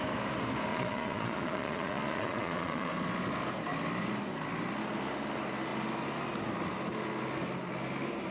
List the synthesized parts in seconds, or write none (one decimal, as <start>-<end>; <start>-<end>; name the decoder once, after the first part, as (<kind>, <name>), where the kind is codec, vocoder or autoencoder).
0.7-2.9 (vocoder, Vocos)

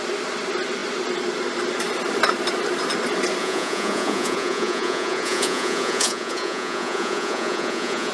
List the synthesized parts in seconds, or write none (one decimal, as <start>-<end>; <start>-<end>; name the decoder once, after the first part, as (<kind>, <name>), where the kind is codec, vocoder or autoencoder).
3.4-8.1 (vocoder, Vocos)

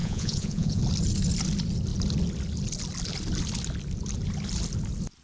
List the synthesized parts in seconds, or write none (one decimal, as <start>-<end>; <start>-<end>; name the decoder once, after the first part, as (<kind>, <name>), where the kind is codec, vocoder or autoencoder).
0.0-0.8 (vocoder, Vocos)

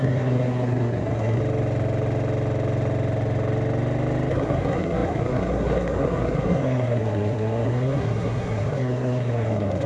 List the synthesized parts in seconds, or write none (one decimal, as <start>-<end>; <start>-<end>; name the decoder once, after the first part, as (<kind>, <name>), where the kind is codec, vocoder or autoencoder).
0.0-1.4 (codec, SNAC); 4.3-9.9

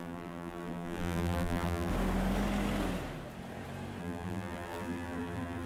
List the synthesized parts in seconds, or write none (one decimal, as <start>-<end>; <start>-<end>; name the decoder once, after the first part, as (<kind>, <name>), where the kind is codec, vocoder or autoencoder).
0.0-1.9 (vocoder, BigVGAN v2); 4.0-5.7

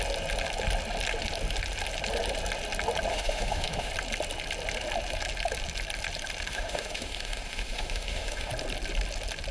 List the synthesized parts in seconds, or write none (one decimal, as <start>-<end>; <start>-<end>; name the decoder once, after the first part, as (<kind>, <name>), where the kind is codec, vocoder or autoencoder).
3.1-3.9 (autoencoder, DAC-VAE); 6.5-8.5

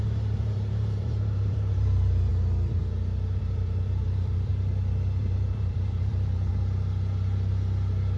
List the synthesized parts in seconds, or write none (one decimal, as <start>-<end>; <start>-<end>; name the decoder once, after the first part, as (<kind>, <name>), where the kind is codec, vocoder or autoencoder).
0.0-2.3 (vocoder, BigVGAN v2); 3.4-4.5; 5.2-6.5